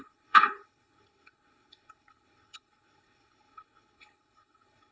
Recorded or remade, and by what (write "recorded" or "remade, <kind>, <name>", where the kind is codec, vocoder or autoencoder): remade, codec, HILCodec